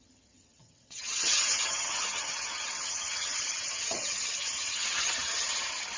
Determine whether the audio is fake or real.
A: fake